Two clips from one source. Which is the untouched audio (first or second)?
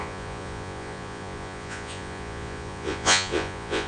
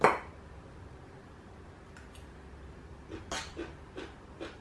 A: second